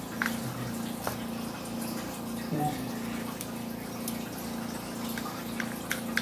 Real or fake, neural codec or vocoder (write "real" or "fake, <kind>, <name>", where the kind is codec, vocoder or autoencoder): real